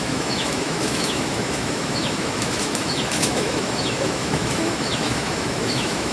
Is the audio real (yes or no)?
no